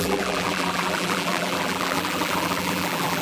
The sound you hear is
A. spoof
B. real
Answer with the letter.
A